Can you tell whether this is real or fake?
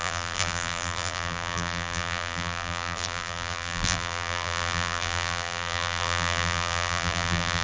fake